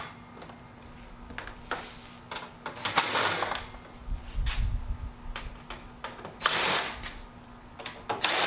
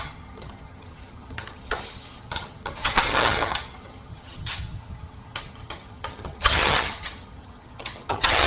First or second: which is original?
first